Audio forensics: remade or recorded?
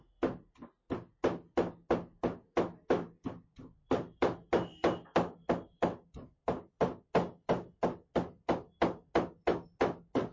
recorded